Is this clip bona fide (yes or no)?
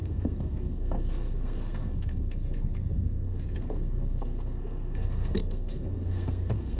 no